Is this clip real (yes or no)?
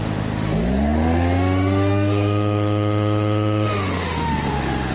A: no